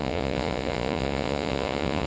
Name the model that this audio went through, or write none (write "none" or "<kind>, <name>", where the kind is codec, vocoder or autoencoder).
vocoder, Vocos